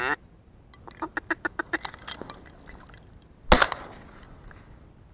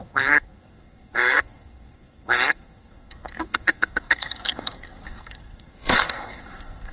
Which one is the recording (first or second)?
first